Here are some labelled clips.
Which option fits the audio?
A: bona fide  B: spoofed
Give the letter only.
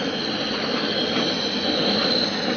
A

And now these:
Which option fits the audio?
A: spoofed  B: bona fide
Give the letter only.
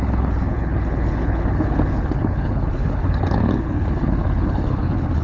A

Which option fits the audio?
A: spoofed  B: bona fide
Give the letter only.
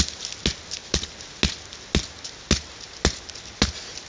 B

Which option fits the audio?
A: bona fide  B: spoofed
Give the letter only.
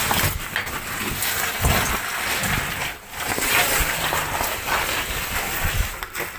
A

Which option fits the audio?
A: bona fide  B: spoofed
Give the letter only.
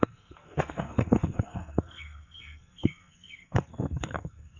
B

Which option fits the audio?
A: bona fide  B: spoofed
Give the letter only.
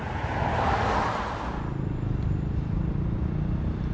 A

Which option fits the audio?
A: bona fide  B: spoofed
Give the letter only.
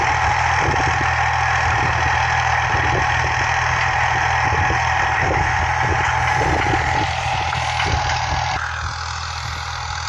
A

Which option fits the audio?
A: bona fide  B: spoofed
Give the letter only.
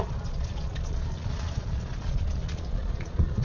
B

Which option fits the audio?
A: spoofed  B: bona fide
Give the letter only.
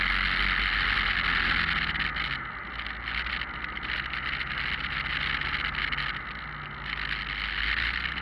B